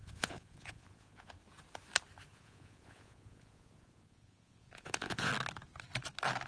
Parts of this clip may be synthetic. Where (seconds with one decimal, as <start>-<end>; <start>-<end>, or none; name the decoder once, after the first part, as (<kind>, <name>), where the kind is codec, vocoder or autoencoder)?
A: 0.0-1.3 (vocoder, Vocos); 2.3-5.3